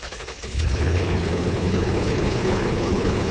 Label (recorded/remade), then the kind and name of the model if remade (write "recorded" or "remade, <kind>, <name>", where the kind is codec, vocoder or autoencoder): remade, codec, HILCodec